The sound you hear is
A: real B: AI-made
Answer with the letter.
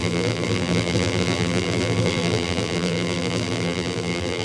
B